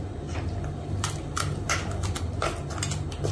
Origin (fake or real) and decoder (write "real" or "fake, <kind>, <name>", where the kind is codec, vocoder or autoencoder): real